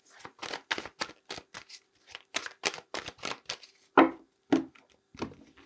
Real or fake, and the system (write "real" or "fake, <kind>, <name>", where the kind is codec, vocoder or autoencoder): real